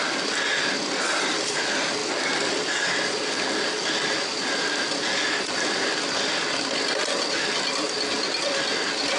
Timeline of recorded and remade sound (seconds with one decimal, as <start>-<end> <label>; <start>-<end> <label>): 0.0-9.2 recorded